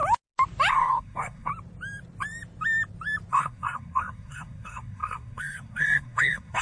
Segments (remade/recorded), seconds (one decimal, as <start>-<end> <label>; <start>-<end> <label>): 0.0-0.7 recorded; 0.7-1.5 remade; 1.5-3.3 recorded; 3.3-6.6 remade

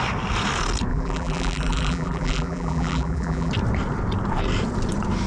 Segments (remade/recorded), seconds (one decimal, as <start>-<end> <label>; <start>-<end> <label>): 0.0-0.9 recorded; 0.9-3.5 remade; 3.5-5.3 recorded

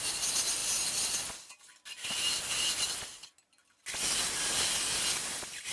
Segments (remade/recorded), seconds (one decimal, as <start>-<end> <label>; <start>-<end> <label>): 0.0-5.7 recorded

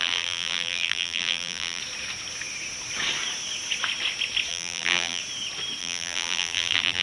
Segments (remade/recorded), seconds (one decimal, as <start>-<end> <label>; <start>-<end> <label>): 0.0-1.8 remade; 1.8-4.5 recorded; 4.5-5.2 remade; 5.2-5.8 recorded; 5.8-7.0 remade

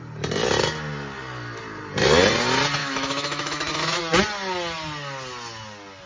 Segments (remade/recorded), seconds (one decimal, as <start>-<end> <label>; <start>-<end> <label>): 0.0-2.8 recorded; 2.8-4.0 remade; 4.0-6.1 recorded

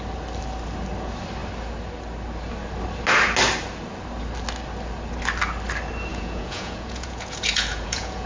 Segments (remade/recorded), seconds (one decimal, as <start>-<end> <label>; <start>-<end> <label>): 0.0-6.1 recorded; 6.1-8.3 remade

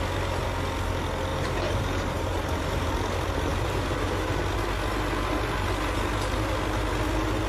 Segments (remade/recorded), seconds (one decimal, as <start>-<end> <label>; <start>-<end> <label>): 0.0-1.3 recorded; 1.3-2.9 remade; 2.9-3.5 recorded; 3.5-4.4 remade; 4.4-7.5 recorded

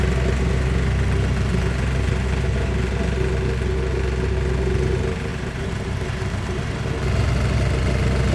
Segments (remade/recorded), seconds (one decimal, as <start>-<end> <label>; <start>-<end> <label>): 0.0-5.3 recorded; 5.3-6.9 remade; 6.9-8.3 recorded